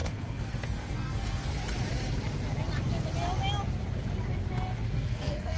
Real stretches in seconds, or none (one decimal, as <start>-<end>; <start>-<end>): 1.5-4.9